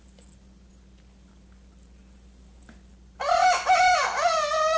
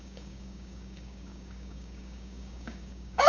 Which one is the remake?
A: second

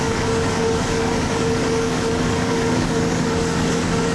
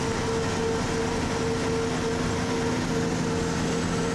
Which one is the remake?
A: first